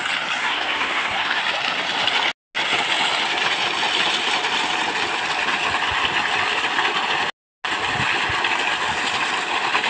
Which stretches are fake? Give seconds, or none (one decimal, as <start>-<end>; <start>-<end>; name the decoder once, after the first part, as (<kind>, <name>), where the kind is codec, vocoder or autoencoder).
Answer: 0.4-1.4 (codec, SNAC)